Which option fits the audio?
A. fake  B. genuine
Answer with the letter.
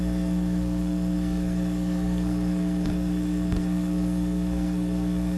A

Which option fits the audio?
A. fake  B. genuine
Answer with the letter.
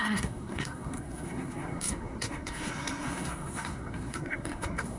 A